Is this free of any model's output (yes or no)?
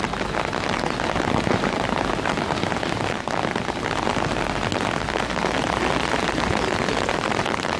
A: yes